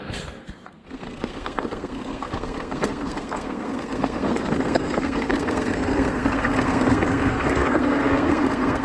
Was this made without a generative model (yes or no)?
no